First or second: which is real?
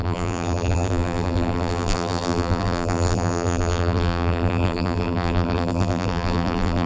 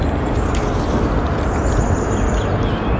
second